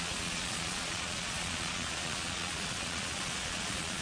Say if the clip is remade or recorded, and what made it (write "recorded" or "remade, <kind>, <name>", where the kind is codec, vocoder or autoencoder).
remade, vocoder, Vocos